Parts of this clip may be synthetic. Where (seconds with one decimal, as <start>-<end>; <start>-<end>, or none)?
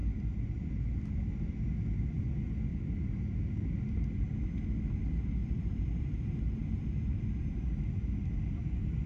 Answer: 0.0-0.7; 2.7-4.6; 5.4-7.6